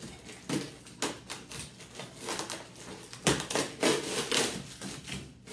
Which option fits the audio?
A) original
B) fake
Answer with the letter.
A